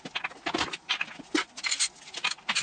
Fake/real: real